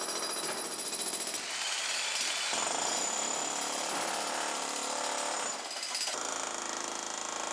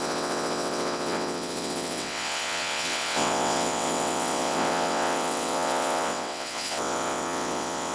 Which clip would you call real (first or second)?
first